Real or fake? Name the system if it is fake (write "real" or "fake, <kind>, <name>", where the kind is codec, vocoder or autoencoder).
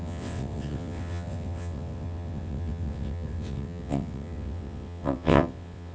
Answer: fake, vocoder, WaveNeXt